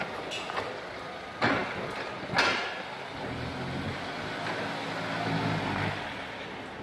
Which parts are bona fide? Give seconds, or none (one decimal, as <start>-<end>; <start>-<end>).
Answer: 0.0-6.8